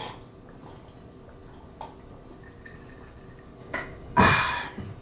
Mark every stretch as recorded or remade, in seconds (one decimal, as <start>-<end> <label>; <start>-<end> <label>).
0.0-3.6 recorded; 3.6-4.2 remade; 4.2-5.0 recorded